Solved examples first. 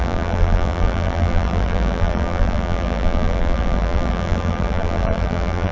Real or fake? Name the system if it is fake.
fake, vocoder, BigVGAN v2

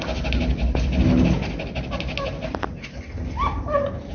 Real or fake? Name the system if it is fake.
real